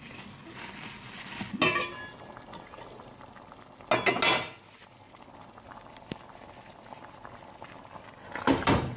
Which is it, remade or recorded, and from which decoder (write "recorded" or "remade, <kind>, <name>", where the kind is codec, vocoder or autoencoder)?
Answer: recorded